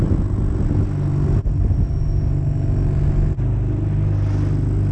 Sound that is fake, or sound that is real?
real